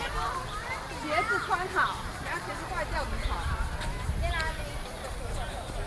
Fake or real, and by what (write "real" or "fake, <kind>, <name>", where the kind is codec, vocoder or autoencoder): real